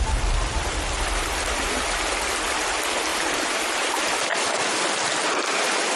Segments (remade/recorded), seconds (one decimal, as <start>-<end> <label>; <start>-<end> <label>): 0.0-3.1 recorded; 3.1-3.9 remade; 3.9-6.0 recorded